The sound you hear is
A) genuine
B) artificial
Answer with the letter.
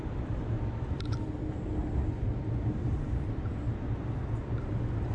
A